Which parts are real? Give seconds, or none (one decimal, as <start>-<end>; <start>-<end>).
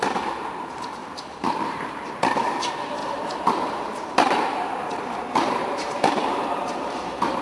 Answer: 0.0-1.0; 2.1-3.0